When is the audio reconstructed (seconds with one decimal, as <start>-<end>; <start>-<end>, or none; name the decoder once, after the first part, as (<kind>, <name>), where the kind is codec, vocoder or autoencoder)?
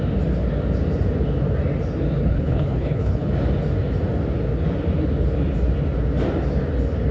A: 2.2-3.3 (codec, HILCodec)